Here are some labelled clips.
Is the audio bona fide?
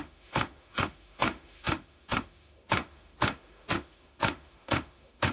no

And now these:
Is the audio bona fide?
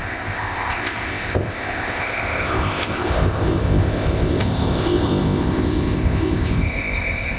no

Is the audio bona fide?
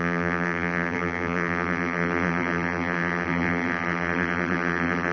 no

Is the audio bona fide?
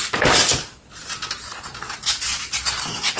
yes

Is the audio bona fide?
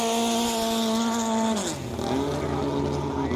yes